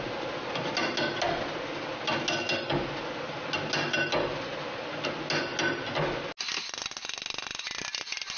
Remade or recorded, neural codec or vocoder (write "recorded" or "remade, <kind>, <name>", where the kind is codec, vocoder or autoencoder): recorded